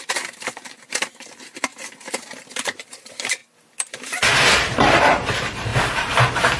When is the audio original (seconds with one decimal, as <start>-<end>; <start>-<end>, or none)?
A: 3.4-4.4